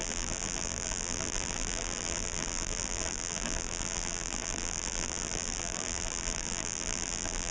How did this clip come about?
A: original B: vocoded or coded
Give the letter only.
B